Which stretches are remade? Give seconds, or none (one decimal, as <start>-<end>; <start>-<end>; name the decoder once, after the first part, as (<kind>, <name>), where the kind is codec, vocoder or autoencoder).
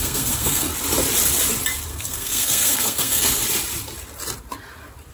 0.0-0.7 (codec, SNAC); 1.9-3.4